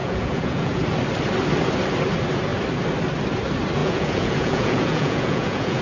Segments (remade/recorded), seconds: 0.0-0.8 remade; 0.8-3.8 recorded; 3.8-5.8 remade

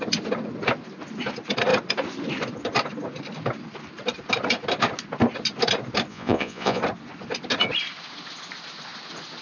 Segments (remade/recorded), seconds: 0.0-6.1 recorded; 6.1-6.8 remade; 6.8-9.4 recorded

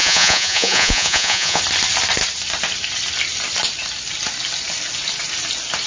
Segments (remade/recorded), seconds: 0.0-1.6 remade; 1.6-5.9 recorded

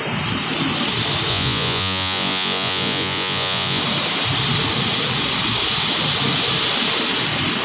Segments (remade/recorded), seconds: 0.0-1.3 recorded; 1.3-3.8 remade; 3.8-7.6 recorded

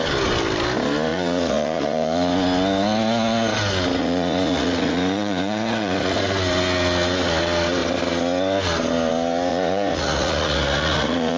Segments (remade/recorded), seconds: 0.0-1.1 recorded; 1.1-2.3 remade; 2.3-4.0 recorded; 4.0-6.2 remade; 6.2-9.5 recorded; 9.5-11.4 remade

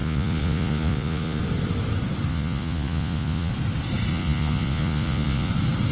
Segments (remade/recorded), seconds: 0.0-1.4 remade; 1.4-2.3 recorded; 2.3-3.5 remade; 3.5-4.1 recorded; 4.1-5.5 remade; 5.5-5.9 recorded